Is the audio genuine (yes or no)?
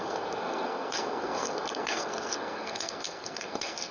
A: no